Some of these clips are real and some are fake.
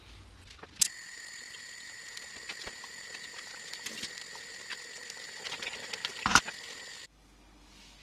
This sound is real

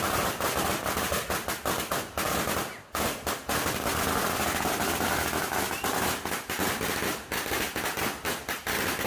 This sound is real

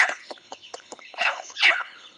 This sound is fake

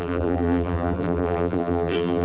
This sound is fake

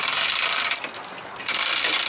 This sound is real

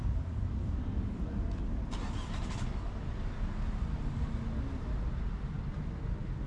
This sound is real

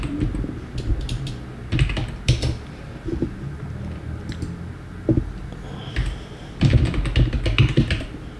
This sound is real